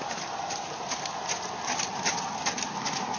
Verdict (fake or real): real